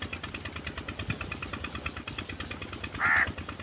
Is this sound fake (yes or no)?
no